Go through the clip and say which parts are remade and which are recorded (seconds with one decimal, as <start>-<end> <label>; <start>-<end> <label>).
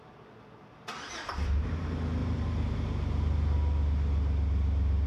0.0-2.2 recorded; 2.2-2.7 remade; 2.7-5.1 recorded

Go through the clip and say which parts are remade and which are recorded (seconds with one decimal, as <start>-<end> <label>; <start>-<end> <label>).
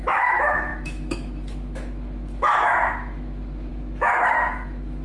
0.0-5.0 remade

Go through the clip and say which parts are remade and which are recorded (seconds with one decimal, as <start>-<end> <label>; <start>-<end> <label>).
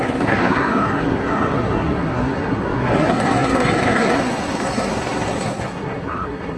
0.0-6.6 remade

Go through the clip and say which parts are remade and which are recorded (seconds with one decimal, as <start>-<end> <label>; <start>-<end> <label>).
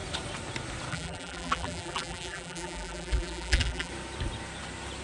0.0-0.9 recorded; 0.9-3.9 remade; 3.9-5.0 recorded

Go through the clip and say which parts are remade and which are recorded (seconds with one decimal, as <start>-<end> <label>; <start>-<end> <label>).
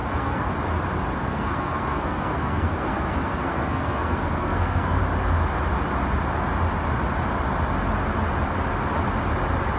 0.0-0.5 remade; 0.5-1.2 recorded; 1.2-5.0 remade; 5.0-9.8 recorded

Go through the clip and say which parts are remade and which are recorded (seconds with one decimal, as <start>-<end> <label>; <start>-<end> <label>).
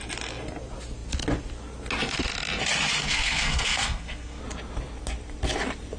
0.0-3.1 recorded; 3.1-4.4 remade; 4.4-6.0 recorded